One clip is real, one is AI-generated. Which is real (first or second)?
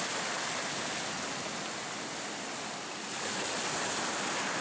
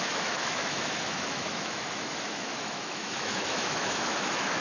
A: first